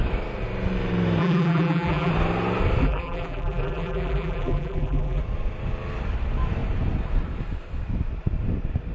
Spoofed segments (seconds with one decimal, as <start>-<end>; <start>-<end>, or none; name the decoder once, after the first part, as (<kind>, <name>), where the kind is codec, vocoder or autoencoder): 1.2-2.1 (vocoder, BigVGAN v2); 2.8-5.2